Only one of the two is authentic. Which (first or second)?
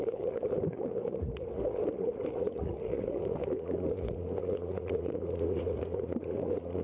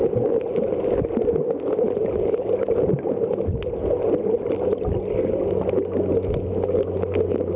second